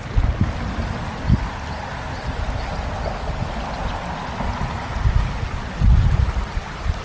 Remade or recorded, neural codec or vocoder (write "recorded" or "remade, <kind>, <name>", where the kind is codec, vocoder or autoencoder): recorded